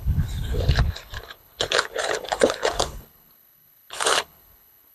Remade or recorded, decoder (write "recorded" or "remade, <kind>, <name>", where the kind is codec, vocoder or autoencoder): remade, codec, HILCodec